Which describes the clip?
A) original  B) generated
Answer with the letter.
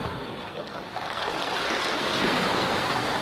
B